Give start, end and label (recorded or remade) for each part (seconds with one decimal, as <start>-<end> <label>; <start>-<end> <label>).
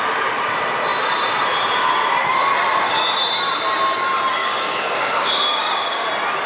0.0-4.4 recorded; 4.4-6.1 remade; 6.1-6.5 recorded